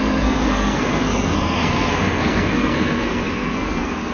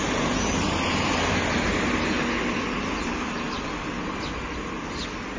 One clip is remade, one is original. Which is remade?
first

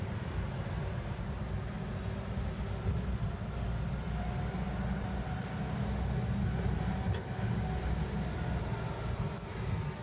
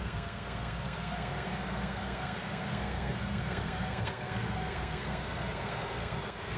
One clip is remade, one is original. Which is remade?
second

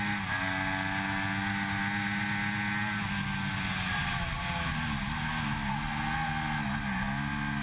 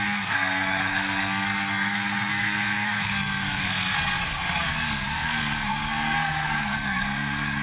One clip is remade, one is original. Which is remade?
second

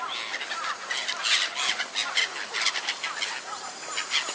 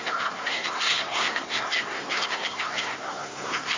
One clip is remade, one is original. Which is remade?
second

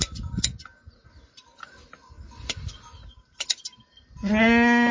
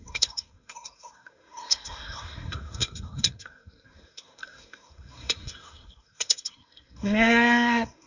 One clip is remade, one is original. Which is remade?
second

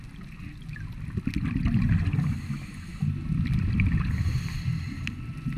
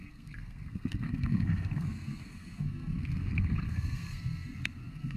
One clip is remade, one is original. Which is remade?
second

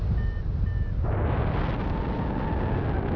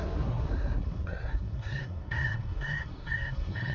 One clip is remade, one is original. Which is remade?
second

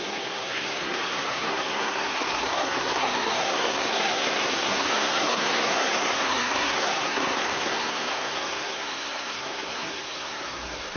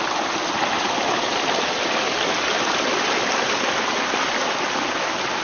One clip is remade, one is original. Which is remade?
first